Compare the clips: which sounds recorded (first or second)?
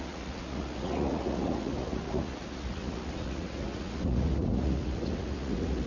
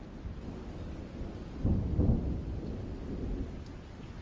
second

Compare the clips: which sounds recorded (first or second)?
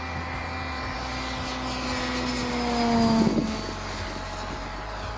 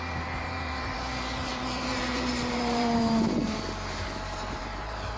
first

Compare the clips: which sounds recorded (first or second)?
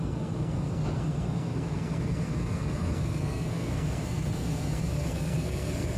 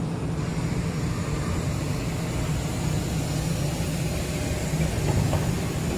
second